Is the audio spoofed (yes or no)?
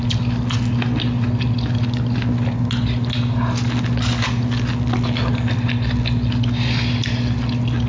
no